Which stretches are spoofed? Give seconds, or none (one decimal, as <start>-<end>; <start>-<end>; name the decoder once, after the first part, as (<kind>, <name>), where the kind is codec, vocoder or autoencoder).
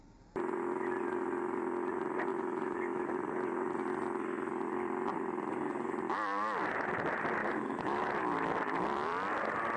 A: 2.3-3.1 (autoencoder, DAC-VAE); 7.4-8.0